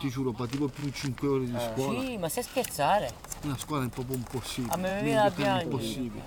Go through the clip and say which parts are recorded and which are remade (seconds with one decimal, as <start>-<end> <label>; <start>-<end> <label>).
0.0-6.3 recorded